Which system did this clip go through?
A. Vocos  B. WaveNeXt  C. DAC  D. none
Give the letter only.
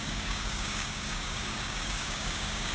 C